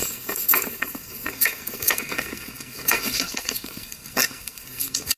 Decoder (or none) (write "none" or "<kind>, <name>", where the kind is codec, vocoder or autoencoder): codec, SNAC